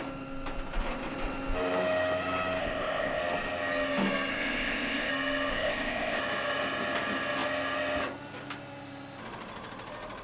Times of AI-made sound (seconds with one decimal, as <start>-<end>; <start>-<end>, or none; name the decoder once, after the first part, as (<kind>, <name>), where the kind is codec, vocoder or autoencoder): 2.6-3.2 (codec, ZipCodec); 4.3-5.1; 5.5-6.2